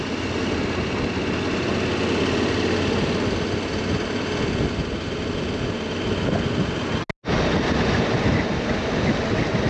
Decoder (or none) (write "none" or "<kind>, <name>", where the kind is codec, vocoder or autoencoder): none